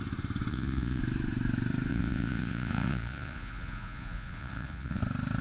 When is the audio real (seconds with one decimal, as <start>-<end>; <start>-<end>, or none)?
0.0-0.5; 1.0-1.9; 5.0-5.4